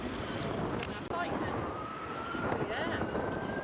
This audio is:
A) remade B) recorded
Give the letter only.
A